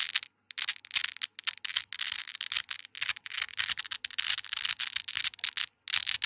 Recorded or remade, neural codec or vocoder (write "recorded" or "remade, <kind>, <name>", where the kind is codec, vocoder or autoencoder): recorded